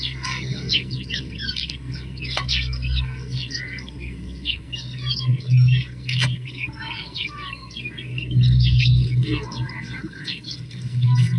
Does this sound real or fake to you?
fake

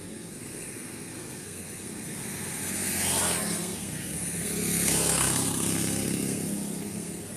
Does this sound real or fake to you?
fake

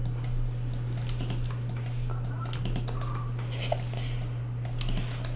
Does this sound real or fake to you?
real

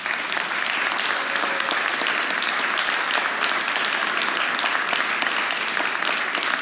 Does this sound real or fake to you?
real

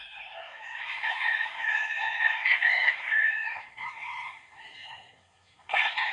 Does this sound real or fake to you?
fake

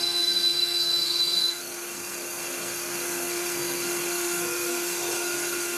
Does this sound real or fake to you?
fake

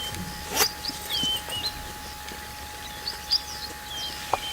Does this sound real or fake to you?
real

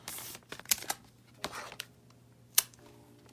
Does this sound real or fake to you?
real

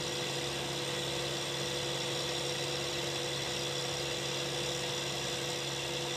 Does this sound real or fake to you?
real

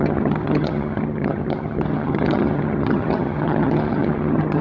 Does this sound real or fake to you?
fake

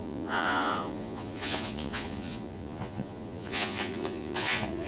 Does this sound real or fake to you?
fake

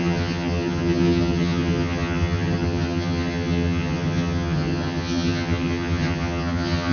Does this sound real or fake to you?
fake